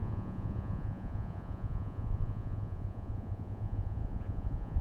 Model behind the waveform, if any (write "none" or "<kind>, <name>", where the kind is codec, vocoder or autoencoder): vocoder, Vocos